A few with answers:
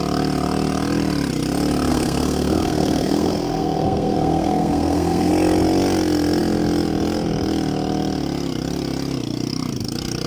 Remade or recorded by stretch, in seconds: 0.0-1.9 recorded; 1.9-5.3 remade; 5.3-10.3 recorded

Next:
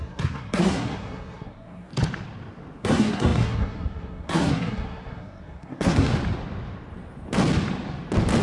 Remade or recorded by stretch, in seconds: 0.0-1.9 remade; 1.9-2.8 recorded; 2.8-6.1 remade; 6.1-8.4 recorded

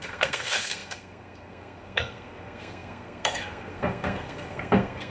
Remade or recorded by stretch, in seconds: 0.0-5.1 remade